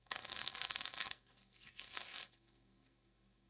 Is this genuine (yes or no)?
no